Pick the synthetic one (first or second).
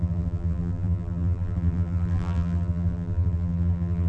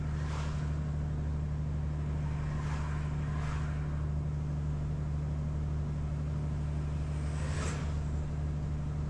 first